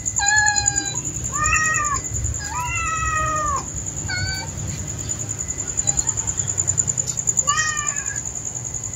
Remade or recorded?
recorded